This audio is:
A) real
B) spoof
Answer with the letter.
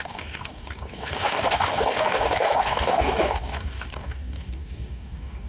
B